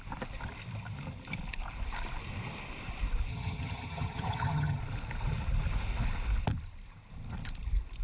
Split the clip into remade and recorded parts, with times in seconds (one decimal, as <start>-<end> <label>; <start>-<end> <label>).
0.0-3.3 recorded; 3.3-4.8 remade; 4.8-8.0 recorded